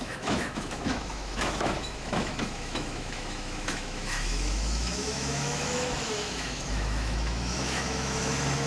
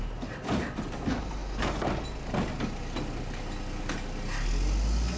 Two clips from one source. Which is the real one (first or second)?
second